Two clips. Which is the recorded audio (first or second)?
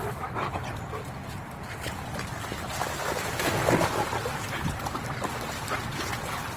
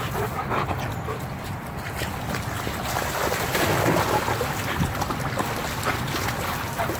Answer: first